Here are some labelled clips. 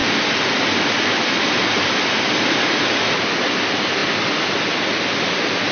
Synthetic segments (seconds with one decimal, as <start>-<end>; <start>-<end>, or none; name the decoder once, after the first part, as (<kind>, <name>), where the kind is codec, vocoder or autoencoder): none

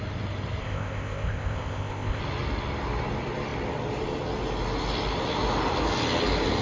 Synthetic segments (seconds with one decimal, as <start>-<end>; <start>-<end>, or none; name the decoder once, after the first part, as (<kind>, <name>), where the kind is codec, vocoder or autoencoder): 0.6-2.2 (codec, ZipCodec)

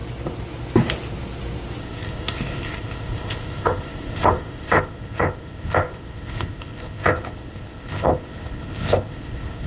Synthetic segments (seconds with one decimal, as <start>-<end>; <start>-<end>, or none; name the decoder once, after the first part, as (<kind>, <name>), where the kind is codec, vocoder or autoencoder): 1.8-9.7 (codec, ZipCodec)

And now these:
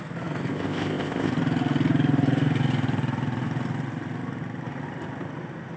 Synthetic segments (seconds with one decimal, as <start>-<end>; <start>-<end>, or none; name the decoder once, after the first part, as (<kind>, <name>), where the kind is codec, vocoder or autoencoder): 0.5-1.3 (codec, ZipCodec)

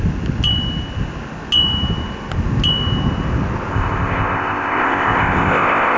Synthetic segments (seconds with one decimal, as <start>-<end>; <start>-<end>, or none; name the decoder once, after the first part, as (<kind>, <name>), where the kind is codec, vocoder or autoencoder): 3.7-6.0 (codec, ZipCodec)

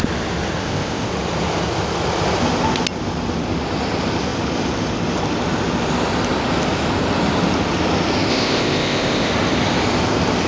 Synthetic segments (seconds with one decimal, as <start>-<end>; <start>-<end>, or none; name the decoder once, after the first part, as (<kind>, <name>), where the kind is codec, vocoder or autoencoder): 0.6-1.1 (codec, ZipCodec); 8.3-9.3